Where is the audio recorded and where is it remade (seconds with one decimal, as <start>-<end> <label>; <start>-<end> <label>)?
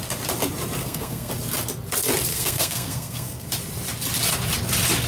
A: 0.0-0.8 recorded; 0.8-1.3 remade; 1.3-2.3 recorded; 2.3-3.5 remade; 3.5-5.1 recorded